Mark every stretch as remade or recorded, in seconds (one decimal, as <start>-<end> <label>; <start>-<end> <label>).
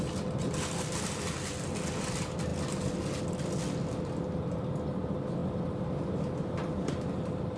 0.0-7.6 recorded